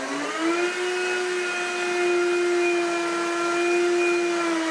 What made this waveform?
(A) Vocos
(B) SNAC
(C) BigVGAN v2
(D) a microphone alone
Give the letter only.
D